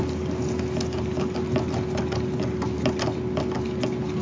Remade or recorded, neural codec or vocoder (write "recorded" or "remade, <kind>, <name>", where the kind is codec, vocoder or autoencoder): recorded